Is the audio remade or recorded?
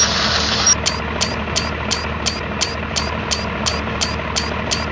recorded